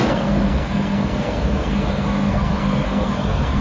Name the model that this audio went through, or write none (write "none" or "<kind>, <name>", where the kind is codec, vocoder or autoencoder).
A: codec, SNAC